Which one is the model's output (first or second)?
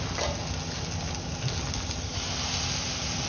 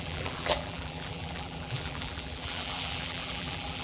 second